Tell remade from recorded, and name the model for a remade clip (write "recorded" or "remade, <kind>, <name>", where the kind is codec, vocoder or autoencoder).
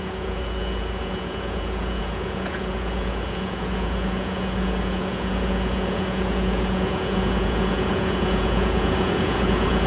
remade, vocoder, Vocos